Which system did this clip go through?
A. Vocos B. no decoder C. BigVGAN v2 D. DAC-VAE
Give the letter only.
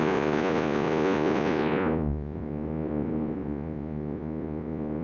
A